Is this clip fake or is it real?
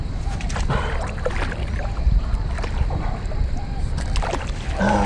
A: real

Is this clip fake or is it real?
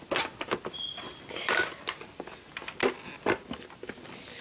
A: real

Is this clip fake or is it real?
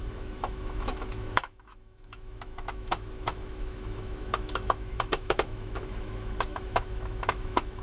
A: fake